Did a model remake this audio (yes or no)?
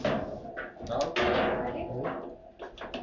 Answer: no